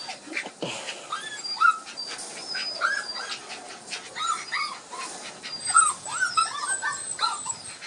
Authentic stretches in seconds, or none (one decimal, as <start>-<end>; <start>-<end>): 0.0-7.9